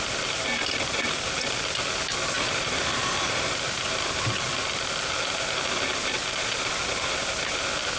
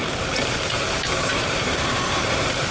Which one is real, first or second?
first